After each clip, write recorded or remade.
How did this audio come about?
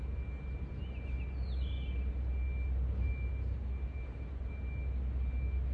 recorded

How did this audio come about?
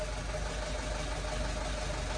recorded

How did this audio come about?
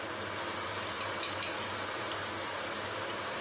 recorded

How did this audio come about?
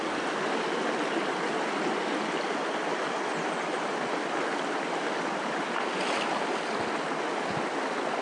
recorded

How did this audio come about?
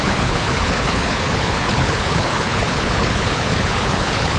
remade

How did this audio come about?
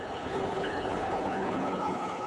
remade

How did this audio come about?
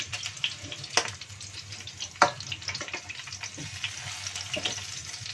recorded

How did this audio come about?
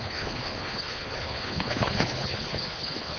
remade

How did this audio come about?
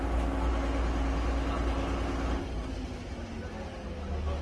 recorded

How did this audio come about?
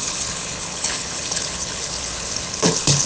remade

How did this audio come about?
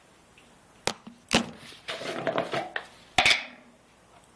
recorded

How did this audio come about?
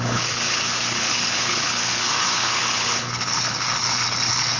remade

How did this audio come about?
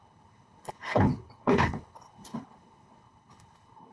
remade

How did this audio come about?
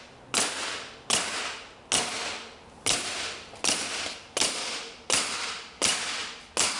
recorded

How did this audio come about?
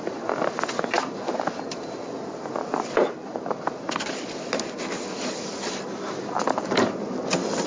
recorded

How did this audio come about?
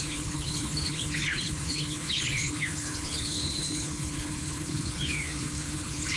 remade